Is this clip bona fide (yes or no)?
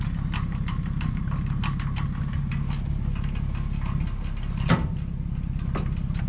yes